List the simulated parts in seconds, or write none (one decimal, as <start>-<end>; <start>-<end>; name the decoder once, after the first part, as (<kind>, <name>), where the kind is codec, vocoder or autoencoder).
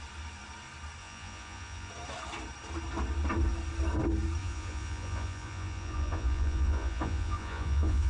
1.0-1.9 (vocoder, Vocos); 4.4-8.1